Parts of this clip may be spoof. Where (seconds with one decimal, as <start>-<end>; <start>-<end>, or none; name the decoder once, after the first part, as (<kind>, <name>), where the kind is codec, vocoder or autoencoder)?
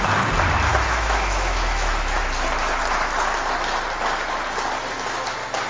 0.7-2.2 (autoencoder, DAC-VAE)